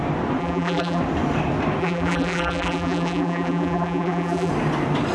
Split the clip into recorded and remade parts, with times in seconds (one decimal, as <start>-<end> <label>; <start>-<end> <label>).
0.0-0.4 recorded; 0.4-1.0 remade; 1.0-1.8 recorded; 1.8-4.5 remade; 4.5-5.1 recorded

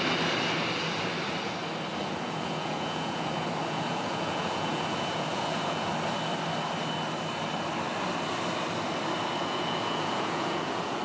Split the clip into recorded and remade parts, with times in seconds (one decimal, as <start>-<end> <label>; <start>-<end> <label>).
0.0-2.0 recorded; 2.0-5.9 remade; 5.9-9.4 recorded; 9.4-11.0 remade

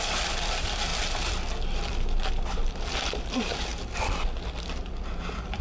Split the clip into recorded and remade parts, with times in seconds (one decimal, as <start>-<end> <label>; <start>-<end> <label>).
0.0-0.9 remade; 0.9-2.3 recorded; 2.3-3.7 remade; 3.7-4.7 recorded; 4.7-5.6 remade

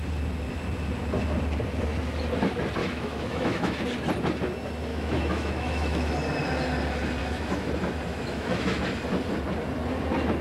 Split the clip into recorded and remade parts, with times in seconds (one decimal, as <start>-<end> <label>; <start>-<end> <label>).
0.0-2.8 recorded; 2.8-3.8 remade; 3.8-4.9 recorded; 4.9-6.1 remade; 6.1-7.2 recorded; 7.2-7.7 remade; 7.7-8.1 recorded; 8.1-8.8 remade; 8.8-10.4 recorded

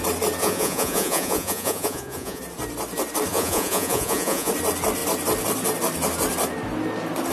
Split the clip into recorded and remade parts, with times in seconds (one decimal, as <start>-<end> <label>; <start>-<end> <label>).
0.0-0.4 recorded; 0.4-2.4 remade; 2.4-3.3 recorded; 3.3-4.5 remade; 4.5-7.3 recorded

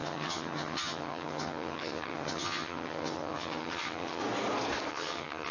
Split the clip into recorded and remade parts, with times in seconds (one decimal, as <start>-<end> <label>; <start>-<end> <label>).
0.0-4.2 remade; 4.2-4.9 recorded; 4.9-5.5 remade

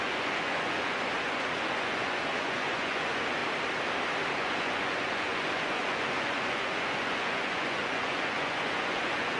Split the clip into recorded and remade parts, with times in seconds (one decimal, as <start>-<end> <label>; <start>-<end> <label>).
0.0-3.4 remade; 3.4-4.3 recorded; 4.3-9.4 remade

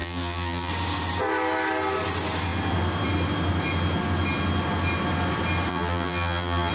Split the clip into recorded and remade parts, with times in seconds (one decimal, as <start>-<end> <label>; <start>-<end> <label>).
0.0-0.7 remade; 0.7-5.7 recorded; 5.7-6.7 remade